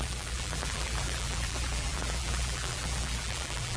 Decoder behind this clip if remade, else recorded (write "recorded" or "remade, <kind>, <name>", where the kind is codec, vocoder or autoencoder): remade, vocoder, BigVGAN v2